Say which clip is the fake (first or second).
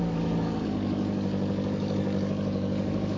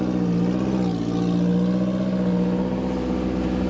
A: first